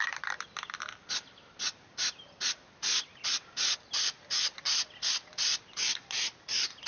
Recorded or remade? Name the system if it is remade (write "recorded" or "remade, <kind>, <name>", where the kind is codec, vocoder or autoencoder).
recorded